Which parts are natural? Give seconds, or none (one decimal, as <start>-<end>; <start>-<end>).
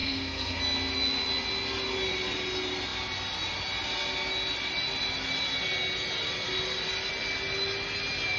0.6-8.4